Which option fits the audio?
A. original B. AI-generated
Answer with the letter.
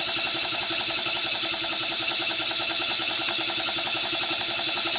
B